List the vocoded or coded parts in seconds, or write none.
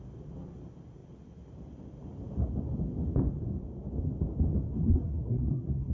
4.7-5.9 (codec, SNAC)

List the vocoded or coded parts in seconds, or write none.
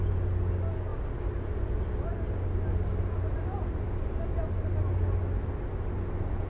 none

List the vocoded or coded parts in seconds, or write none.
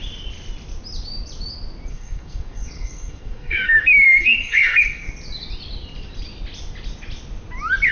1.9-5.1 (codec, SNAC)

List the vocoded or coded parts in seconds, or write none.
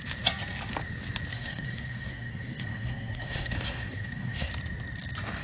1.3-4.5 (codec, SNAC)